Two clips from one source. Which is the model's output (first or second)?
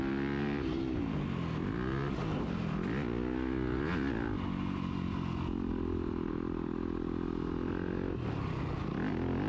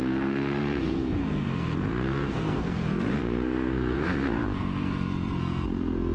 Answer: second